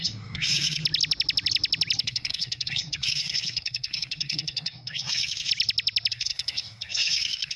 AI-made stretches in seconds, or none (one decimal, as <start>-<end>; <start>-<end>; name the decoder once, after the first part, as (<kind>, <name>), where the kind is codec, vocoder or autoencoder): 0.0-0.8 (codec, SNAC); 2.0-5.5; 6.1-7.6